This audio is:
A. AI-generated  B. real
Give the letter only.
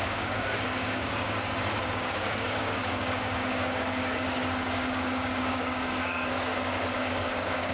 A